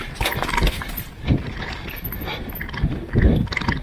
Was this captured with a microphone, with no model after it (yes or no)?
yes